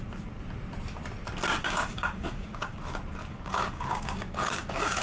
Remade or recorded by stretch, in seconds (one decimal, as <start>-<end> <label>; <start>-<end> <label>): 0.0-1.6 recorded; 1.6-2.8 remade; 2.8-3.2 recorded; 3.2-5.0 remade